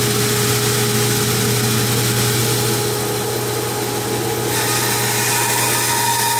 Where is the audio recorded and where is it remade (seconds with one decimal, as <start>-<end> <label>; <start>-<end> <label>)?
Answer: 0.0-6.4 recorded